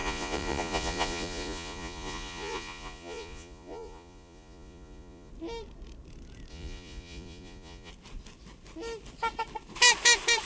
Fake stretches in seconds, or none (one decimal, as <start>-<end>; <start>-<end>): 0.0-5.3; 6.5-7.9